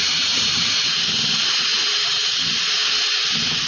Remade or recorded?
recorded